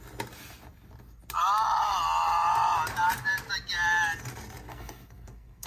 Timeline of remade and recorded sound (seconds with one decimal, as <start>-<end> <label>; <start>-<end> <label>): 0.0-4.7 recorded; 4.7-5.7 remade